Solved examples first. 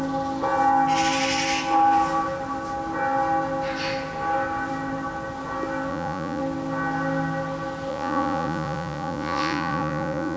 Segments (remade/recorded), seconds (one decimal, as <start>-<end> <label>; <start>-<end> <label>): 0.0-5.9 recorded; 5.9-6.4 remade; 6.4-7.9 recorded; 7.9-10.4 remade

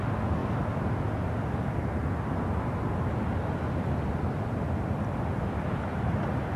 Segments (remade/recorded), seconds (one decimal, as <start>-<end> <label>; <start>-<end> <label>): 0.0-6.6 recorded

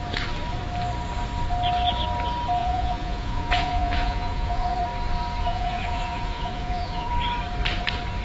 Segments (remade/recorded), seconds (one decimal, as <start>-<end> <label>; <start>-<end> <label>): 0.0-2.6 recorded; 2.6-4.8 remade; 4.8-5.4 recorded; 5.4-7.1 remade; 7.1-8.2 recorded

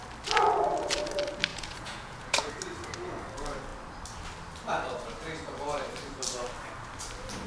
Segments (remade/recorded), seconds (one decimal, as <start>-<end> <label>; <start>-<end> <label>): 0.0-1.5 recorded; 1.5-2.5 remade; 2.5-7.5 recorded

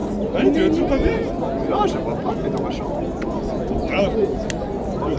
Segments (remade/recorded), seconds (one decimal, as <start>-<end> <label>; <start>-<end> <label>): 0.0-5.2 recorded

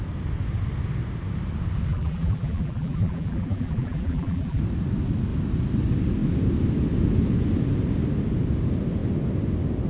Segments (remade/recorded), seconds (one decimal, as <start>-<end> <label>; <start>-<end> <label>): 0.0-1.9 recorded; 1.9-4.6 remade; 4.6-9.9 recorded

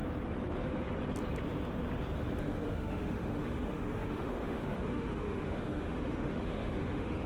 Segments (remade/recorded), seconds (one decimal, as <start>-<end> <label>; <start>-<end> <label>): 0.0-2.4 recorded; 2.4-7.3 remade

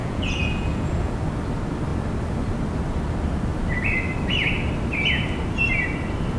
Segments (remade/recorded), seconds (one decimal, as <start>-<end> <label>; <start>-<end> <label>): 0.0-1.1 remade; 1.1-6.4 recorded